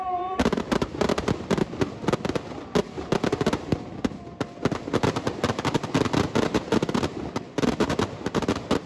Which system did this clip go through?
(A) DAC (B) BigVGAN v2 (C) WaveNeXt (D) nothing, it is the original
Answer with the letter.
D